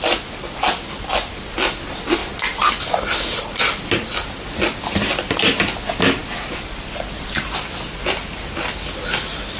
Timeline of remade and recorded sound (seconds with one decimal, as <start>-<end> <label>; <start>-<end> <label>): 0.0-9.6 recorded